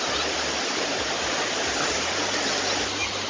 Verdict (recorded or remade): recorded